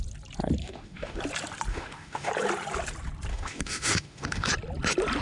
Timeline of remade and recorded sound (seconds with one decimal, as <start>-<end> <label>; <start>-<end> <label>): 0.0-0.6 recorded; 0.6-1.2 remade; 1.2-1.7 recorded; 1.7-2.3 remade; 2.3-3.3 recorded; 3.3-4.5 remade; 4.5-5.2 recorded